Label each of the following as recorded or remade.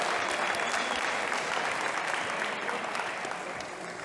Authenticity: recorded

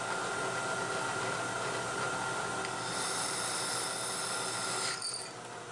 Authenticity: recorded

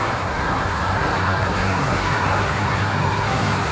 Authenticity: remade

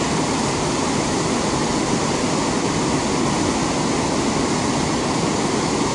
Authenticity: recorded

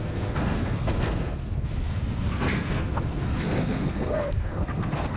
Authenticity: remade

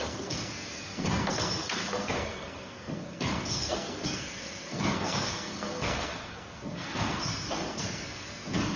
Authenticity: remade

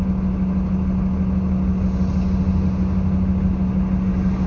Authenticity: recorded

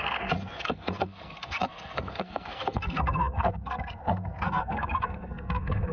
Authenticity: remade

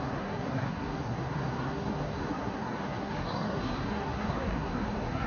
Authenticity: remade